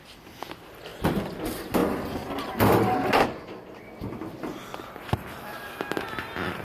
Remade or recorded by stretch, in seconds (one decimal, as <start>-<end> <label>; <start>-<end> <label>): 0.0-6.6 recorded